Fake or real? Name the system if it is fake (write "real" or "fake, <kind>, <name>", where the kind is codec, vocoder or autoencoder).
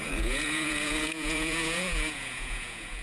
fake, vocoder, Vocos